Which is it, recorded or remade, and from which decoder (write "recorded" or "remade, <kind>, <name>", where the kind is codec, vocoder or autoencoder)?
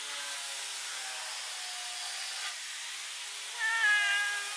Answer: recorded